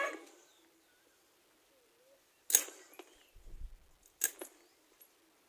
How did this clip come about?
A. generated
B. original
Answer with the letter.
B